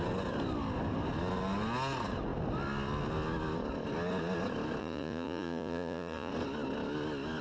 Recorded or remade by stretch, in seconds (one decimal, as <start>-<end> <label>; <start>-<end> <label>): 0.0-4.8 recorded; 4.8-6.3 remade; 6.3-7.4 recorded